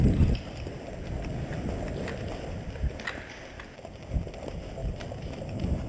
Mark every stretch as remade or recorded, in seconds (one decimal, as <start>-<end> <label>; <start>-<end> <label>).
0.0-5.9 recorded